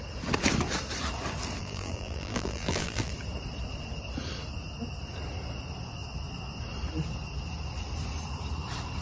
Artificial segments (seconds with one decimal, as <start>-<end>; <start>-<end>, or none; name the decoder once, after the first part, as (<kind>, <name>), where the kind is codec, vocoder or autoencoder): 1.6-3.1 (vocoder, BigVGAN v2)